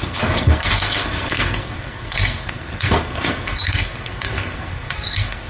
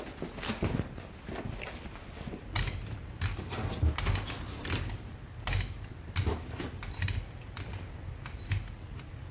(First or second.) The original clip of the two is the second